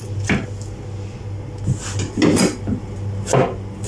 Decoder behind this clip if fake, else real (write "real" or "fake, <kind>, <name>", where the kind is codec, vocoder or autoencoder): real